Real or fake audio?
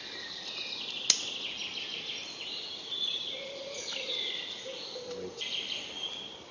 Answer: real